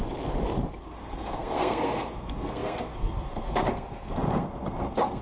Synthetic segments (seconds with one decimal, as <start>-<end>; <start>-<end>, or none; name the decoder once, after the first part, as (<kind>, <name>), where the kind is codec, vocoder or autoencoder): 0.8-5.2 (codec, SNAC)